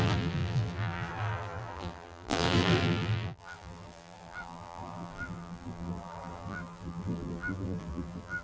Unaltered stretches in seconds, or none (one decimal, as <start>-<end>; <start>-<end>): none